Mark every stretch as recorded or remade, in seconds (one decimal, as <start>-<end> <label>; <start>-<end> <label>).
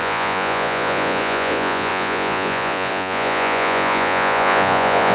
0.0-5.1 remade